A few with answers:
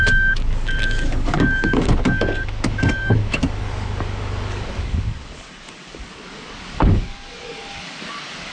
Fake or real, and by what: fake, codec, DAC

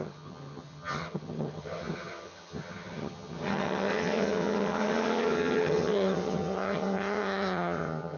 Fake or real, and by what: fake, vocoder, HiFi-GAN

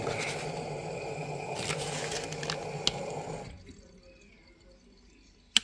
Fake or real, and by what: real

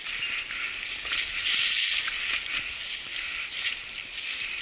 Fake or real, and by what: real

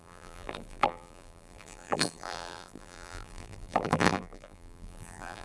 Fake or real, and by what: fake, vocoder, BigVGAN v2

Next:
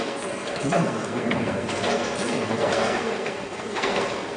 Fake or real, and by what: fake, codec, SNAC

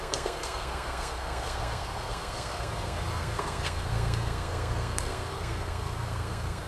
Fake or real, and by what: fake, codec, SNAC